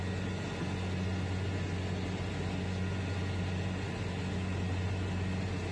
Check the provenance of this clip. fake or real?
real